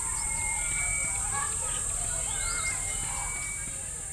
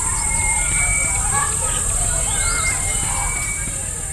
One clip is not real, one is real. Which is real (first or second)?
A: first